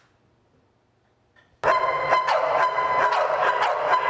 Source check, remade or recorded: recorded